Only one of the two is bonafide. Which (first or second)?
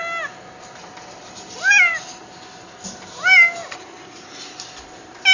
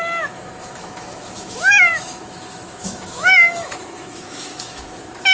first